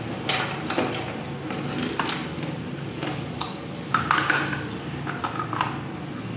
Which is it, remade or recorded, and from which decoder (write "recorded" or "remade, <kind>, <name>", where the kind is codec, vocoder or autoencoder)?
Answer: recorded